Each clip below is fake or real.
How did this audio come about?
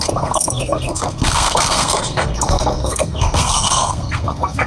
fake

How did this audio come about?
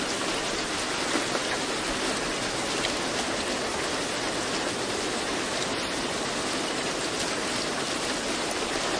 real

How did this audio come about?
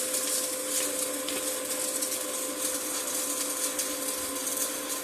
real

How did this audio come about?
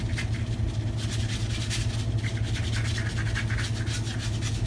real